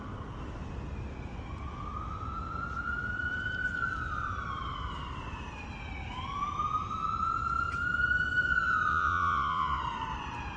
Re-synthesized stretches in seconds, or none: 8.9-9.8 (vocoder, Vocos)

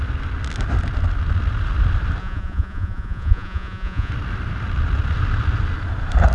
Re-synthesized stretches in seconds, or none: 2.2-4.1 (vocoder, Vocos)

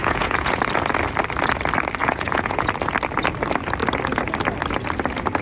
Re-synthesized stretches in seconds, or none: 0.0-0.6 (vocoder, Vocos); 2.0-2.7

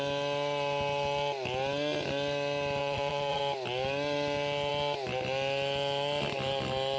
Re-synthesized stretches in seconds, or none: 2.8-3.4 (vocoder, Vocos)

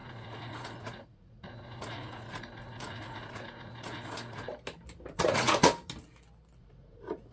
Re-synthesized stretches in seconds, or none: 0.0-4.5 (vocoder, Vocos); 5.1-5.7; 6.6-7.3